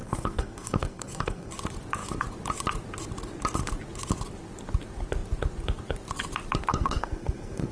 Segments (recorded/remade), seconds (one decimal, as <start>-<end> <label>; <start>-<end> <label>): 0.0-1.5 remade; 1.5-6.7 recorded; 6.7-7.7 remade